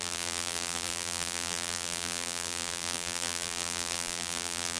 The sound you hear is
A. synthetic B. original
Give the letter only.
A